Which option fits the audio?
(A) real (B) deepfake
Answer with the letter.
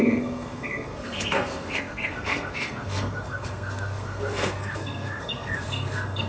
B